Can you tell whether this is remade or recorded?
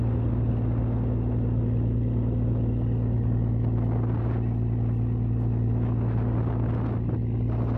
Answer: recorded